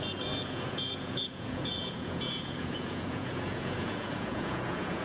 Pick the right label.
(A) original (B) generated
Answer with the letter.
B